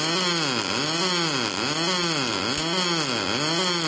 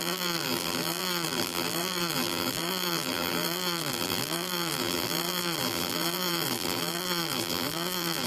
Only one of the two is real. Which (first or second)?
first